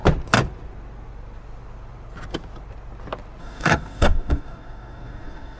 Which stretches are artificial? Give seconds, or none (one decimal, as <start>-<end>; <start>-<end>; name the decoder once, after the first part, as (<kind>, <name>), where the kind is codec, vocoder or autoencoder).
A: 3.4-5.6 (codec, DAC)